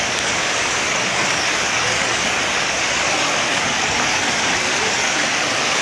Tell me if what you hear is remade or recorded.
remade